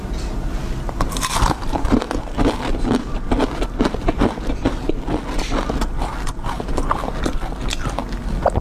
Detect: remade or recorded recorded